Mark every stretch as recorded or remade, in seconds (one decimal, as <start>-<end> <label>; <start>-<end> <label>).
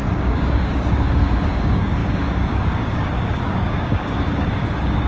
0.0-5.1 remade